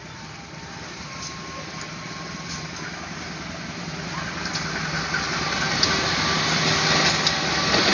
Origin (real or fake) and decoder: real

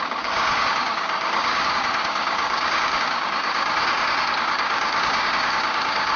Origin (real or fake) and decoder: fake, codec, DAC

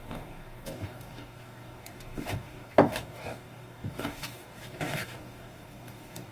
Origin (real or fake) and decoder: fake, codec, DAC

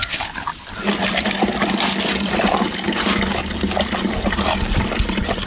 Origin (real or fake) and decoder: real